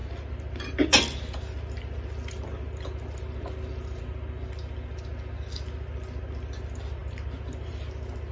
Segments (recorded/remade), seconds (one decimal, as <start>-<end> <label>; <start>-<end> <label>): 0.0-8.3 recorded